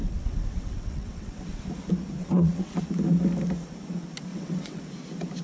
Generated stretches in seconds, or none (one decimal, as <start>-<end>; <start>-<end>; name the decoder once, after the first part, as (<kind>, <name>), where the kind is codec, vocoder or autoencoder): 0.0-1.6 (vocoder, WaveNeXt); 2.2-2.8; 4.3-4.8